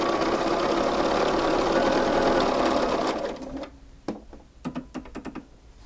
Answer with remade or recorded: recorded